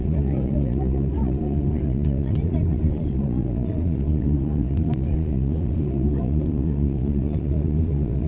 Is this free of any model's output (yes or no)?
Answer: no